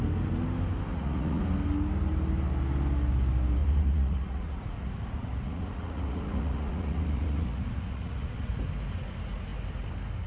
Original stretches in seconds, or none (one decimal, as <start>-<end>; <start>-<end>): 0.0-0.9; 1.4-3.6; 8.5-10.3